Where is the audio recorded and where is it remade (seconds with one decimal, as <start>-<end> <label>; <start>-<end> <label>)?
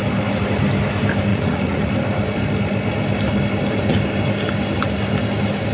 0.0-1.3 recorded; 1.3-1.9 remade; 1.9-5.7 recorded